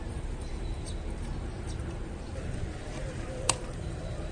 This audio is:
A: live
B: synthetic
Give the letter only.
B